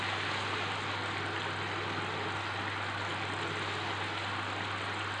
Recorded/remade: recorded